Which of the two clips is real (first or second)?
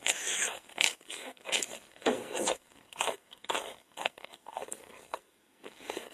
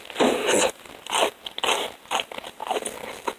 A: second